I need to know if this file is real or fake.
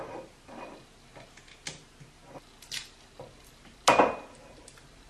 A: real